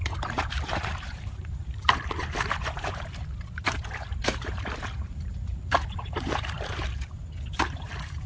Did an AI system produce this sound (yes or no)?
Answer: yes